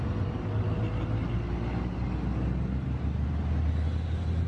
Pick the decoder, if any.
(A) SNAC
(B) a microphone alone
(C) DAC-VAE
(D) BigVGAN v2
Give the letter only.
B